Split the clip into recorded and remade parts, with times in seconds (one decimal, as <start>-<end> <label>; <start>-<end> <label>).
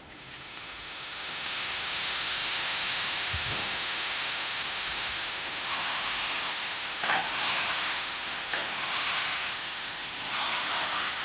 0.0-11.2 remade